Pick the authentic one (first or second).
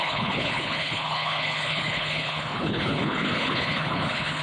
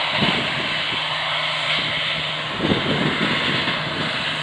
second